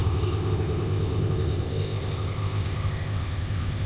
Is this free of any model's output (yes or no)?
no